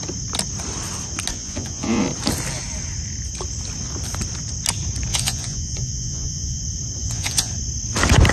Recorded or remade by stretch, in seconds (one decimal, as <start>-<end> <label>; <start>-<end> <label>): 0.0-1.3 recorded; 1.3-2.0 remade; 2.0-5.1 recorded; 5.1-6.6 remade; 6.6-7.0 recorded; 7.0-7.5 remade; 7.5-8.3 recorded

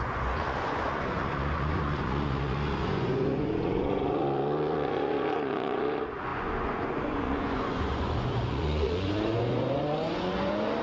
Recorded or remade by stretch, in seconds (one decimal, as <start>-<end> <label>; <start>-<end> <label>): 0.0-10.8 remade

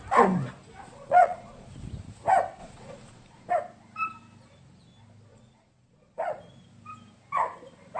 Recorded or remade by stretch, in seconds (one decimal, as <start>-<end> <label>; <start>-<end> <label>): 0.0-0.8 recorded; 0.8-1.7 remade; 1.7-2.6 recorded; 2.6-3.5 remade; 3.5-5.3 recorded; 5.3-6.4 remade; 6.4-8.0 recorded